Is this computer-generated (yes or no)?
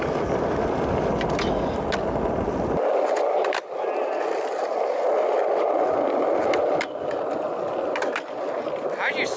no